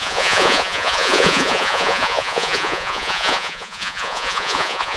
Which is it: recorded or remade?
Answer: remade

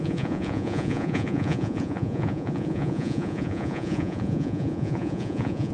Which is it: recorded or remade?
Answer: remade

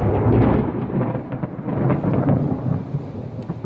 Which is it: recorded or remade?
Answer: recorded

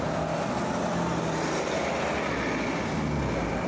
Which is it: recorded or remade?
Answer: recorded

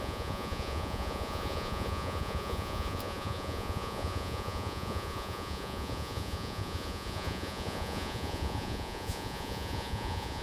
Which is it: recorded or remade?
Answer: remade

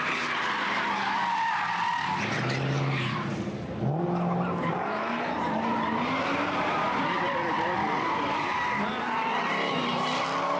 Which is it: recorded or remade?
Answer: recorded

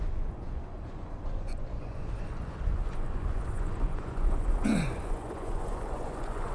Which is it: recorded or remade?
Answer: remade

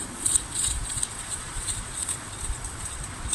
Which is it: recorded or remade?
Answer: remade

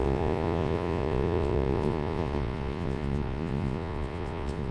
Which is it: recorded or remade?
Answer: remade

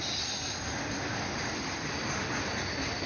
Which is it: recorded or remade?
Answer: recorded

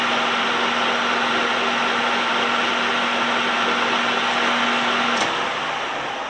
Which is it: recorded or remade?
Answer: recorded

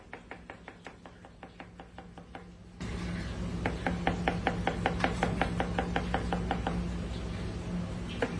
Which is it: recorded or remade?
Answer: recorded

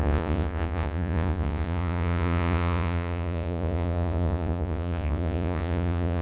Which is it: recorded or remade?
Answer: remade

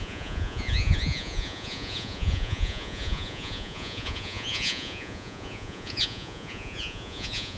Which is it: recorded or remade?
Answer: remade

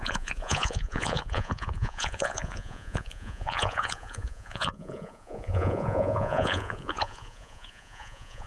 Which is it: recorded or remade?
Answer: remade